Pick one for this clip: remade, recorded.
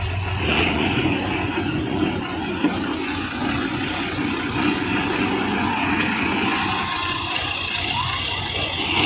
remade